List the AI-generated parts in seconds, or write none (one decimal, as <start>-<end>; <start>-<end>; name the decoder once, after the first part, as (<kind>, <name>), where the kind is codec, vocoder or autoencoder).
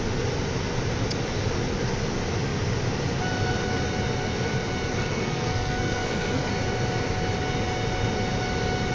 4.9-6.5 (codec, SNAC)